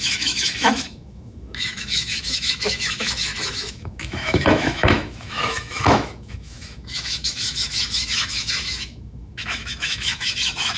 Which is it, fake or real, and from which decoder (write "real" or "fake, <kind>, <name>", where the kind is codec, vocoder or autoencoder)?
fake, autoencoder, DAC-VAE